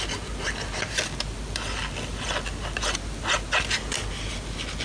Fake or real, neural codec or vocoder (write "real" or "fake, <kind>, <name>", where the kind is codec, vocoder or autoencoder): real